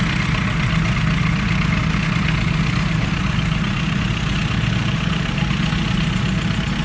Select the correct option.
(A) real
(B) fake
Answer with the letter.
A